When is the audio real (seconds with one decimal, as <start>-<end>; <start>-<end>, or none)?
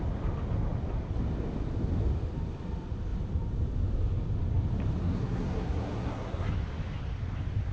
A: 0.0-5.0; 6.5-7.7